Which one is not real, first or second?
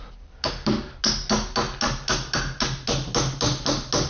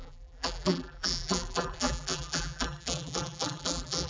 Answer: second